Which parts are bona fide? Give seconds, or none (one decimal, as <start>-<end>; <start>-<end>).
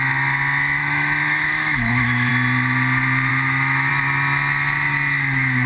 0.0-0.8; 2.3-3.3; 3.9-5.7